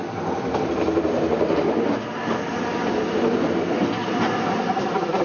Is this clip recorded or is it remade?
recorded